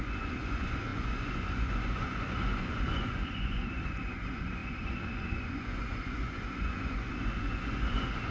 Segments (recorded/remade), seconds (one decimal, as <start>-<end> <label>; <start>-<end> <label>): 0.0-8.3 remade